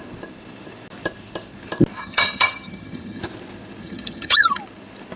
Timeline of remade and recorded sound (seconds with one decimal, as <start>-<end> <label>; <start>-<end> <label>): 0.0-2.0 recorded; 2.0-3.2 remade; 3.2-3.8 recorded; 3.8-4.6 remade; 4.6-5.2 recorded